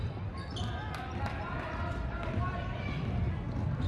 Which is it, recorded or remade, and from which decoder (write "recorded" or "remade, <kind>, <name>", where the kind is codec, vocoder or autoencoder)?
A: recorded